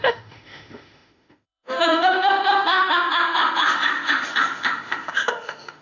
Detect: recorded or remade remade